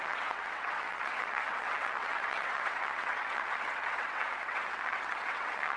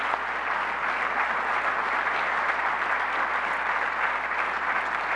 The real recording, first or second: second